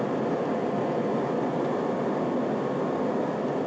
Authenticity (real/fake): real